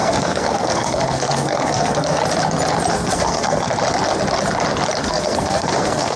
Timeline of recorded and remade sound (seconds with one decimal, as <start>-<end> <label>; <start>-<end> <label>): 0.0-2.2 remade; 2.2-2.9 recorded; 2.9-3.7 remade; 3.7-5.0 recorded; 5.0-6.2 remade